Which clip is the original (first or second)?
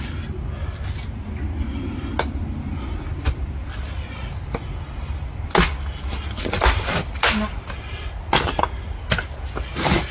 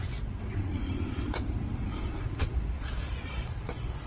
first